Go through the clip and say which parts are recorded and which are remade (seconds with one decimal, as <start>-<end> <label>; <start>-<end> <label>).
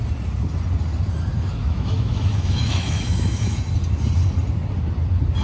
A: 0.0-1.6 recorded; 1.6-3.6 remade; 3.6-5.4 recorded